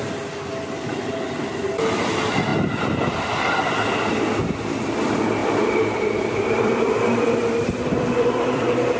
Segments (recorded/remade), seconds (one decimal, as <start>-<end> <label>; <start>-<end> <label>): 0.0-5.4 recorded; 5.4-9.0 remade